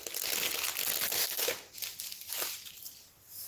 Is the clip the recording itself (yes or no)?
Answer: yes